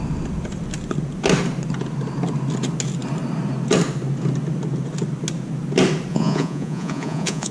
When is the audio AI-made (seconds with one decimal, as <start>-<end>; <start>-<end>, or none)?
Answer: 6.1-7.5